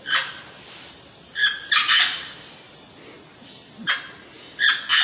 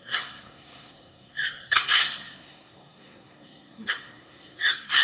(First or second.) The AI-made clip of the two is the second